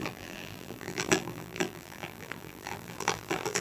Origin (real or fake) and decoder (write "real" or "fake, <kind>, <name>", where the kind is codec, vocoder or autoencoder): fake, vocoder, BigVGAN v2